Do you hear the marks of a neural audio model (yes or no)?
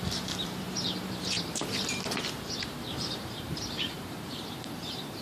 yes